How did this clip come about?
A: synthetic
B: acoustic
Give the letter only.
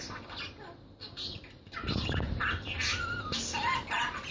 B